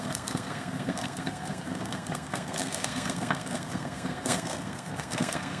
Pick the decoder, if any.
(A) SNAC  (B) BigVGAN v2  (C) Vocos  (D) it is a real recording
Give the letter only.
A